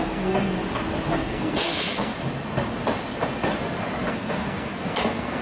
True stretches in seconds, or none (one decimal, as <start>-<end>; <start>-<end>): 0.5-1.1; 2.1-4.1